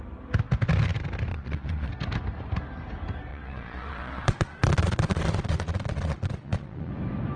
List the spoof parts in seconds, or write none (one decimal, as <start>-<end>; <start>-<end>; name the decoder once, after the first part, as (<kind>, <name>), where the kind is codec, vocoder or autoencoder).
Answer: 1.3-1.9 (vocoder, Vocos); 3.3-6.9